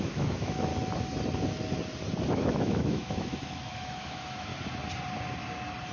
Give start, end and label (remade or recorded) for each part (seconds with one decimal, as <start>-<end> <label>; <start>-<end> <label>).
0.0-0.7 remade; 0.7-2.3 recorded; 2.3-4.5 remade; 4.5-5.9 recorded